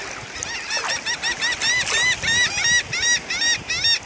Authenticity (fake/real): real